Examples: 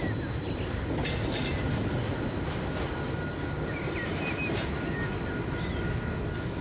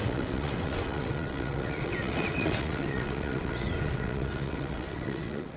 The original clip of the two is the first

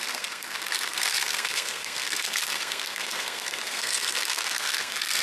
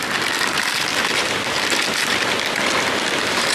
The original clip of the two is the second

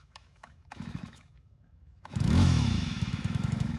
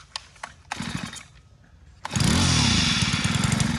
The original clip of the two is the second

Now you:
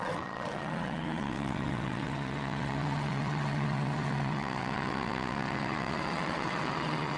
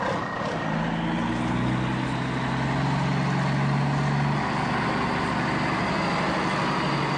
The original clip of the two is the second